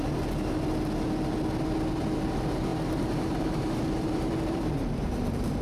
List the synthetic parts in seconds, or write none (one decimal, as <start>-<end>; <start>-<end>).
2.7-5.6